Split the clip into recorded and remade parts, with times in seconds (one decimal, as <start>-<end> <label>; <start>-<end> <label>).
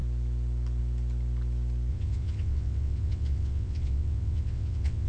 0.0-1.9 recorded; 1.9-5.1 remade